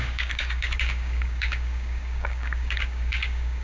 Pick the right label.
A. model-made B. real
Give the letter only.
A